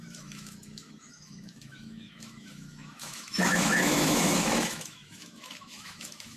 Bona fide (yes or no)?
no